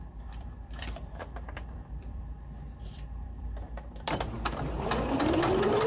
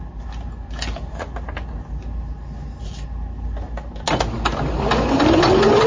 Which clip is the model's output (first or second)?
first